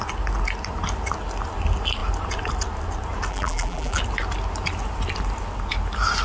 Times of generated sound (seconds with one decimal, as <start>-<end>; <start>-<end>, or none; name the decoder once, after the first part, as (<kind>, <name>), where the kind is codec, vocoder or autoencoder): 3.3-4.0 (vocoder, BigVGAN v2)